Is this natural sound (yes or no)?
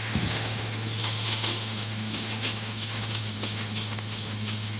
no